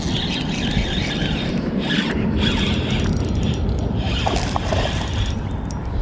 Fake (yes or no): no